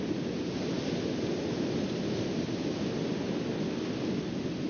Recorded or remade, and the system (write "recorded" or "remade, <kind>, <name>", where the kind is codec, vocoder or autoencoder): recorded